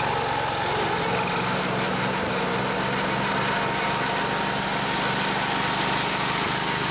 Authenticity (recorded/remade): recorded